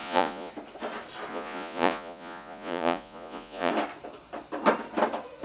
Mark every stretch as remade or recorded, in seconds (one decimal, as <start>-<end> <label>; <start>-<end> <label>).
0.0-0.5 remade; 0.5-1.3 recorded; 1.3-3.7 remade; 3.7-5.4 recorded